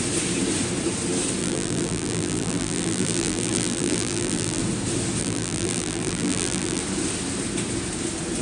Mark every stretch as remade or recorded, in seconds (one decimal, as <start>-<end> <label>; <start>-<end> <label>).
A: 0.0-1.4 recorded; 1.4-4.6 remade; 4.6-5.2 recorded; 5.2-6.8 remade; 6.8-8.4 recorded